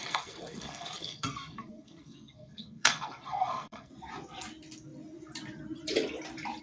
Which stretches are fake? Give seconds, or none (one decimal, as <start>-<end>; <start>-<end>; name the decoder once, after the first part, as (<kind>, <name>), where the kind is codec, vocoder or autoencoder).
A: 0.0-3.9 (codec, SNAC)